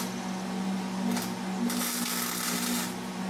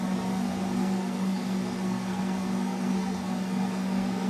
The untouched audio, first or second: first